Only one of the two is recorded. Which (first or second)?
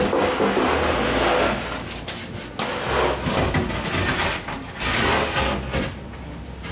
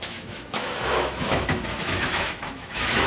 first